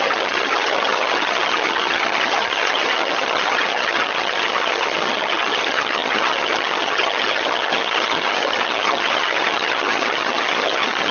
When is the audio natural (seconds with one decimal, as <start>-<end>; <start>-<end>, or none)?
none